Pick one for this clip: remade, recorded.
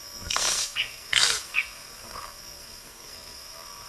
remade